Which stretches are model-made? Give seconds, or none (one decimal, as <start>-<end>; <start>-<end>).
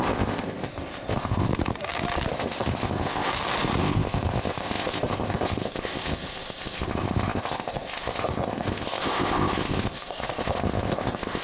0.0-1.5; 2.3-3.3; 3.8-11.4